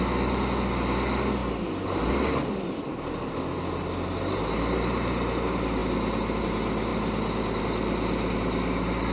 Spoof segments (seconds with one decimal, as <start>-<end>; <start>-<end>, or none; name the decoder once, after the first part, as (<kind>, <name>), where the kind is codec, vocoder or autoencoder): none